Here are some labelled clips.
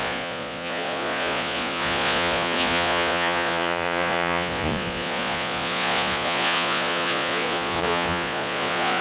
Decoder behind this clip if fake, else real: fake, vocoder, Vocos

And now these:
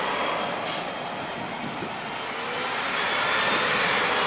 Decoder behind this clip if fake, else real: real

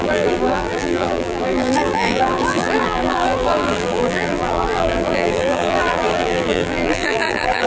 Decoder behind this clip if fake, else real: fake, vocoder, BigVGAN v2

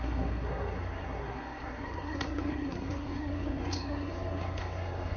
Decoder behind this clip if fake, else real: fake, codec, SNAC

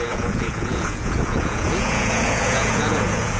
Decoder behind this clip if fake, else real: fake, vocoder, Vocos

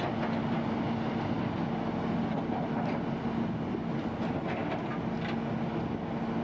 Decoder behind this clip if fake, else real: real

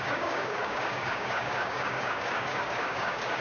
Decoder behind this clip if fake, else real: fake, codec, DAC